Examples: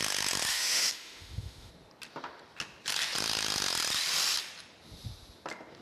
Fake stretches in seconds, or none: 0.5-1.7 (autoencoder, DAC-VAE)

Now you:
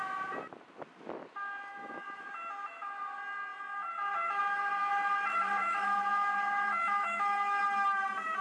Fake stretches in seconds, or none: 1.7-2.3 (autoencoder, DAC-VAE); 5.6-7.6

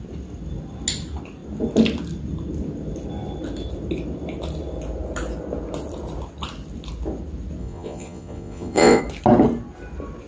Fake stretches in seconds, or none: 7.6-9.0 (vocoder, Vocos)